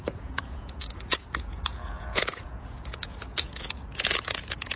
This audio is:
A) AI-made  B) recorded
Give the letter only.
A